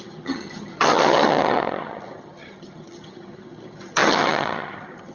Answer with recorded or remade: remade